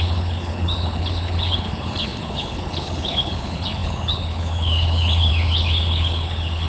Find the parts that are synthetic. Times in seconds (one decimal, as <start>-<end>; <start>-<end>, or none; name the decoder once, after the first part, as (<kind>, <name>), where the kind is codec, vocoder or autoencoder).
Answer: 0.0-6.7 (codec, HILCodec)